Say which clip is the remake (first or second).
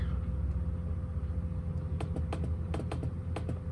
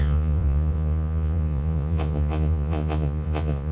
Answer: second